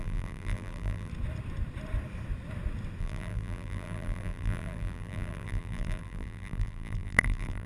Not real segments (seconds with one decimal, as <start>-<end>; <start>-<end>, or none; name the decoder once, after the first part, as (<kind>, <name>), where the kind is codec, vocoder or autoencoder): 0.0-1.1 (vocoder, BigVGAN v2); 3.0-7.7